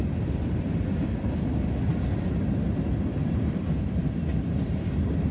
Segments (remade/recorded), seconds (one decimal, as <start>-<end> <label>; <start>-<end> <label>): 0.0-3.2 recorded; 3.2-3.8 remade; 3.8-5.3 recorded